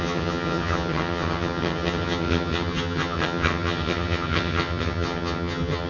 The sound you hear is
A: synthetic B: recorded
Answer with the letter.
A